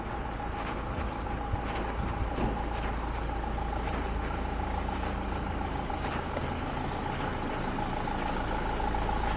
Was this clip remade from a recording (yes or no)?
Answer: no